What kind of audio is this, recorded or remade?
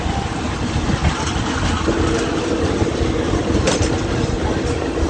recorded